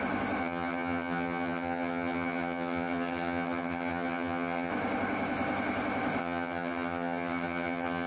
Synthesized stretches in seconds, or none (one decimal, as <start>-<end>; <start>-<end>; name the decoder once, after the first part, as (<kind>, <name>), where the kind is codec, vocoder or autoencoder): 0.4-4.7 (vocoder, HiFi-GAN); 6.2-8.1